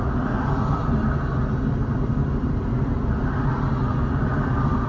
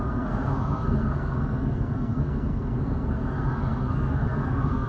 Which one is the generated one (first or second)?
second